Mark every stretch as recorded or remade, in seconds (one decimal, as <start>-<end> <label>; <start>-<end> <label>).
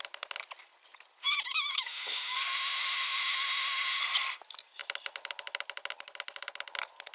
0.0-1.2 recorded; 1.2-4.0 remade; 4.0-7.1 recorded